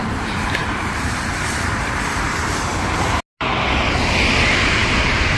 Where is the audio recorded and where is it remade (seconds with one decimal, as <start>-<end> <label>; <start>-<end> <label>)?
0.0-2.7 remade; 2.7-4.3 recorded; 4.3-5.4 remade